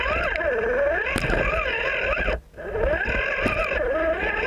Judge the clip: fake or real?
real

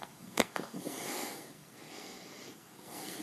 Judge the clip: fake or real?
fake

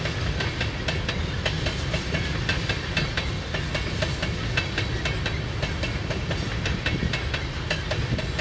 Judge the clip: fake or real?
real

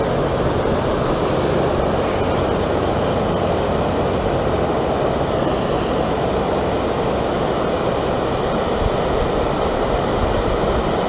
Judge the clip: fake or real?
real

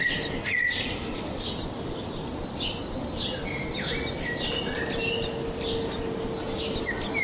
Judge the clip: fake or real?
real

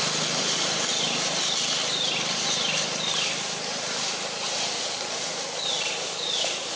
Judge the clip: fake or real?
real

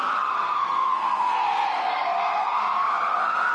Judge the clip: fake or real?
fake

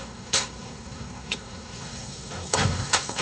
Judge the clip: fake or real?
fake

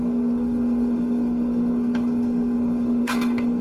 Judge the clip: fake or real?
fake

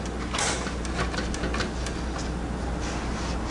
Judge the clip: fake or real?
real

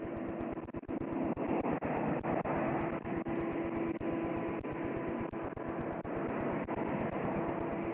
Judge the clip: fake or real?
real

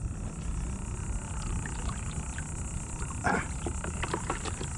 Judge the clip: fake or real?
real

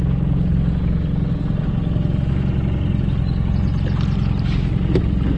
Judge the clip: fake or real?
real